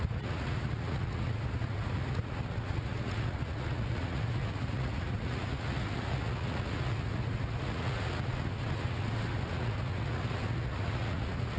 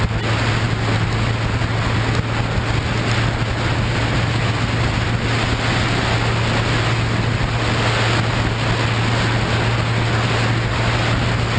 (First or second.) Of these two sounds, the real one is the second